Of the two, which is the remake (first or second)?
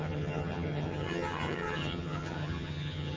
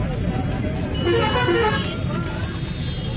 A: first